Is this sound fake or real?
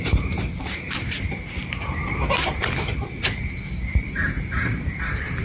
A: fake